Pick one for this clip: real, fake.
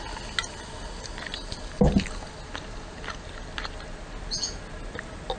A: real